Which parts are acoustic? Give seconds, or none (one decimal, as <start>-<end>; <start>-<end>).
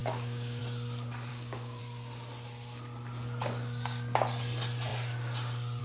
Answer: 0.6-1.3; 1.8-5.8